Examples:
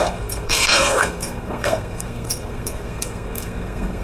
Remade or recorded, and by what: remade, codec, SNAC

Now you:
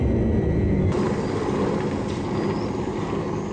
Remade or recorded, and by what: recorded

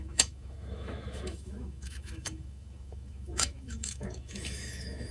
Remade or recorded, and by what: remade, autoencoder, DAC-VAE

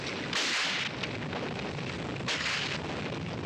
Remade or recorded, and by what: recorded